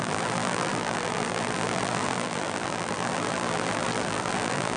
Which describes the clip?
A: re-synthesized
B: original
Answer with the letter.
A